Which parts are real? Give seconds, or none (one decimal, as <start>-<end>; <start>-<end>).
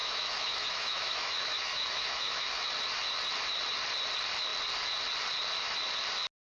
2.7-6.4